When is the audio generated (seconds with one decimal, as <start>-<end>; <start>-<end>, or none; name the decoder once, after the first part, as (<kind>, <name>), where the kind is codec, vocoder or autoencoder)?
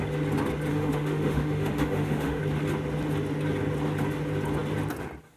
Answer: 0.7-2.4 (autoencoder, DAC-VAE)